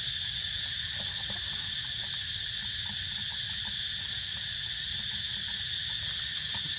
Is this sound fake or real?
real